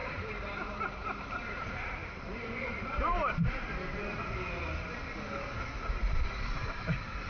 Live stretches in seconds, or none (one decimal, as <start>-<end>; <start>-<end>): 4.2-6.0